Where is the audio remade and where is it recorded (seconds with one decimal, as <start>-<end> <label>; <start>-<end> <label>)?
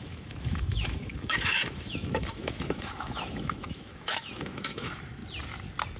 0.0-5.2 remade; 5.2-6.0 recorded